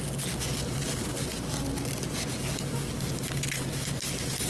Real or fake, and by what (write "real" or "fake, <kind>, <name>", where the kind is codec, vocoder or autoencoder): real